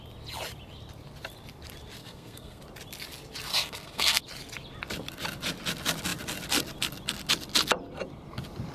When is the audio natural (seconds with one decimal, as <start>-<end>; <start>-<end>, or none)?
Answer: 0.0-2.0; 2.6-3.5; 4.2-8.7